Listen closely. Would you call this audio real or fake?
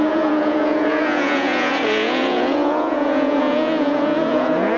fake